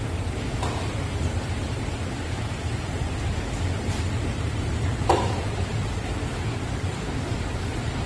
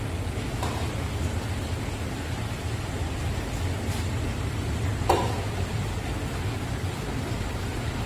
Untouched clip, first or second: second